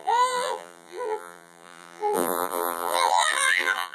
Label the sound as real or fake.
fake